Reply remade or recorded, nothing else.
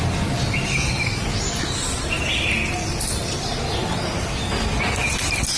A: recorded